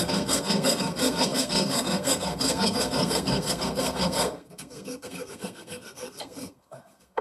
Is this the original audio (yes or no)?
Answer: no